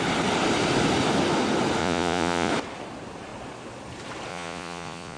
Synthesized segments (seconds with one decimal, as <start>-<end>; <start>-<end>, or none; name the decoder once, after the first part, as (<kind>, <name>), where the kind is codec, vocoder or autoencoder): 1.8-2.5 (vocoder, Vocos); 4.3-5.2